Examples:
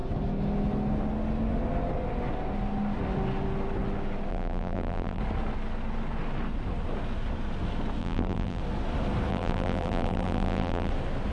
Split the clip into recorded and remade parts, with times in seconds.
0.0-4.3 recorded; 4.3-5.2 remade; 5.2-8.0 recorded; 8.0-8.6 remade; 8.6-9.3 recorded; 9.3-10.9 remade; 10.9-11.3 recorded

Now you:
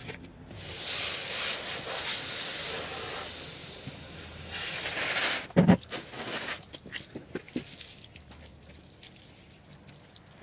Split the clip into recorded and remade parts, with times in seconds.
0.0-0.8 remade; 0.8-3.6 recorded; 3.6-6.5 remade; 6.5-10.4 recorded